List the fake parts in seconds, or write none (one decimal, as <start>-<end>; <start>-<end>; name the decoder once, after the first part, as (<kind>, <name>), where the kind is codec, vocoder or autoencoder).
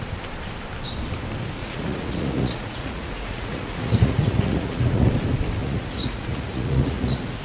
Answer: 1.6-5.1 (vocoder, Vocos); 5.6-7.4